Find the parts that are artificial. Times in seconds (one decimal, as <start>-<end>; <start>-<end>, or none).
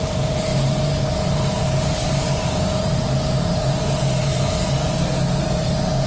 0.0-6.1